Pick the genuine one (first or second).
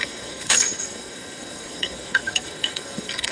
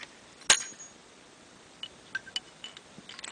second